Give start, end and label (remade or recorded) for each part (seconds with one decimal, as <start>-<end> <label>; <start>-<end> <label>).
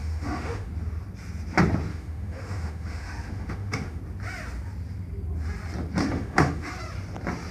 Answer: 0.0-0.7 remade; 0.7-1.9 recorded; 1.9-4.0 remade; 4.0-6.0 recorded; 6.0-6.7 remade; 6.7-7.5 recorded